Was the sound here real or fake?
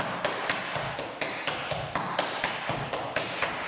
real